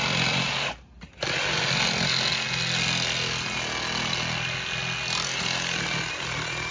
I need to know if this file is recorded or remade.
recorded